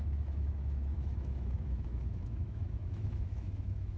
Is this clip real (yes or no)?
no